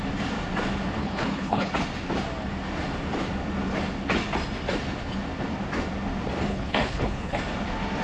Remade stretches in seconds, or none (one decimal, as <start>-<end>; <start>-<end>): 1.0-1.7; 6.5-7.4